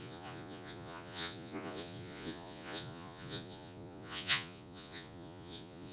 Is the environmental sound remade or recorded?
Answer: remade